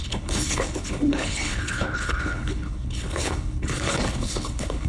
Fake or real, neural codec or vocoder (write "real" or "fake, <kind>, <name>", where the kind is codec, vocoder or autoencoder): fake, codec, HILCodec